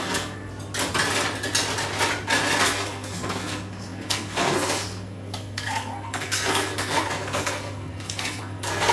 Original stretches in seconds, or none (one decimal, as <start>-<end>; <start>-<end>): 0.5-2.6